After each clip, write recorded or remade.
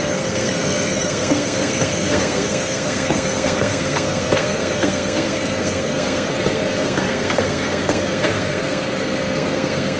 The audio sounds remade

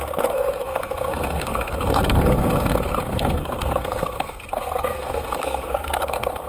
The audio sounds remade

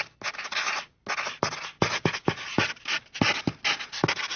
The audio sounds recorded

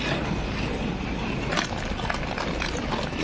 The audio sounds recorded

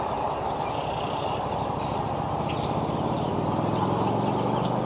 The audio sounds recorded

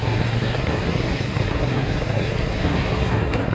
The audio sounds remade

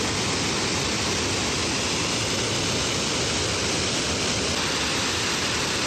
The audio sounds recorded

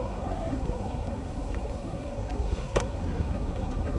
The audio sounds remade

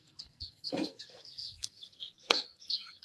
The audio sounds remade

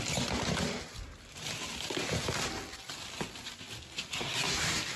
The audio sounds recorded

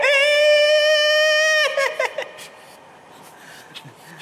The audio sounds recorded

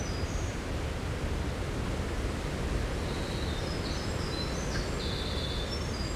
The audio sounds recorded